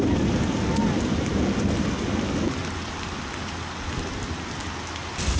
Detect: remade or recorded recorded